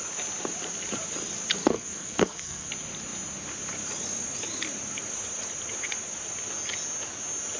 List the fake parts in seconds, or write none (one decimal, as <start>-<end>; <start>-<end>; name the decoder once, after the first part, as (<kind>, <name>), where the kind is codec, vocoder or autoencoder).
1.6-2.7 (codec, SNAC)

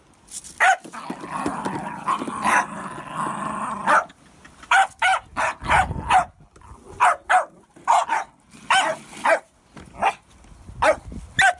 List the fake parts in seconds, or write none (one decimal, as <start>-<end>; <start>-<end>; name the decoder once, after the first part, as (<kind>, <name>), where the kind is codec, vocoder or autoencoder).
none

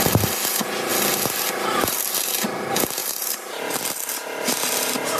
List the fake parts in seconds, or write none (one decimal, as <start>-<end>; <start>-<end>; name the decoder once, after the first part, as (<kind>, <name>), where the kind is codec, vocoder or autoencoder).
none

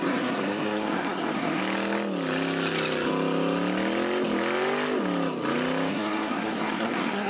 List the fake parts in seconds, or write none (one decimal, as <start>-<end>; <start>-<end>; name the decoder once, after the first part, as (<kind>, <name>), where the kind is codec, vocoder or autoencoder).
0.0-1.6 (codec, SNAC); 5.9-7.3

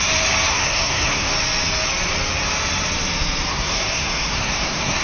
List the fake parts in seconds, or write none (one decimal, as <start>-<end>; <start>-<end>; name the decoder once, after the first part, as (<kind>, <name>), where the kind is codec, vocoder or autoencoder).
0.5-1.3 (codec, SNAC); 3.5-5.0

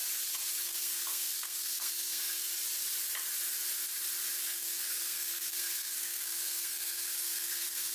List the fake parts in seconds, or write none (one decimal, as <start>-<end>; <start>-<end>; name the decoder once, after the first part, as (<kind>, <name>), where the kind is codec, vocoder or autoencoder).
0.6-2.5 (codec, SNAC); 4.4-7.9